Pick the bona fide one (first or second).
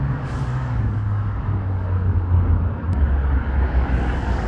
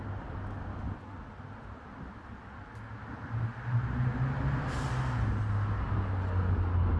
second